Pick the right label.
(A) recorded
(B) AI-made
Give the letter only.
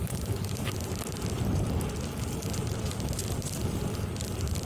A